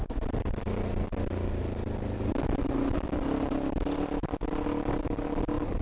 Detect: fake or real real